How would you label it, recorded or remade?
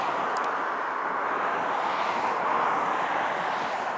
recorded